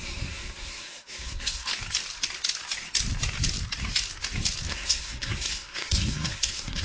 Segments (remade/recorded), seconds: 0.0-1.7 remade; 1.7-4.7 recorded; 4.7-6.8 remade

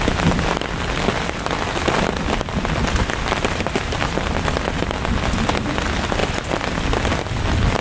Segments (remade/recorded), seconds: 0.0-7.8 recorded

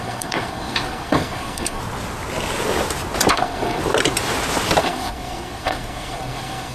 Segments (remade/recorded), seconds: 0.0-1.8 remade; 1.8-3.3 recorded; 3.3-3.8 remade; 3.8-4.8 recorded; 4.8-6.7 remade

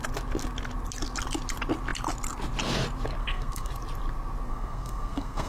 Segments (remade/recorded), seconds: 0.0-3.2 recorded; 3.2-3.7 remade; 3.7-4.5 recorded; 4.5-5.5 remade

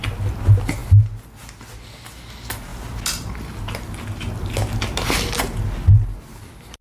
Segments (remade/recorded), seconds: 0.0-6.8 recorded

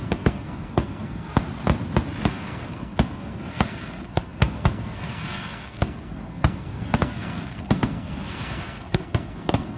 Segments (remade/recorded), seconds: 0.0-1.4 remade; 1.4-2.3 recorded; 2.3-9.8 remade

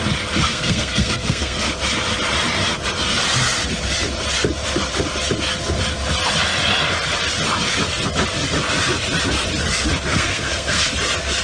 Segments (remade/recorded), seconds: 0.0-0.5 recorded; 0.5-1.7 remade; 1.7-10.1 recorded; 10.1-10.9 remade; 10.9-11.4 recorded